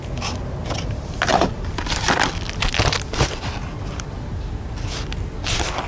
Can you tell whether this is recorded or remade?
recorded